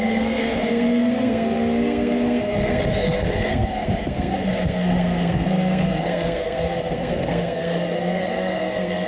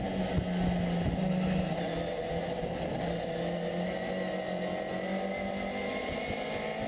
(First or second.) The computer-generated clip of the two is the first